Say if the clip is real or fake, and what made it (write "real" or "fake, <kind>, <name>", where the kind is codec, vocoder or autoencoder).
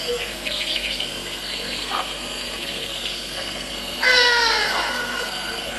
fake, codec, SNAC